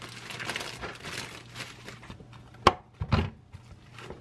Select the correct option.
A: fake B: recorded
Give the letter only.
B